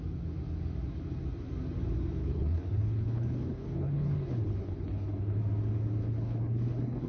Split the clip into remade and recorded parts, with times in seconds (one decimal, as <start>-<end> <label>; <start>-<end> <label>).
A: 0.0-2.2 recorded; 2.2-5.4 remade; 5.4-6.0 recorded; 6.0-7.1 remade